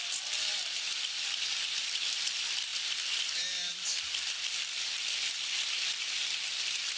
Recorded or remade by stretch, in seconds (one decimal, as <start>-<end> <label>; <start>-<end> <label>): 0.0-0.5 remade; 0.5-1.0 recorded; 1.0-7.0 remade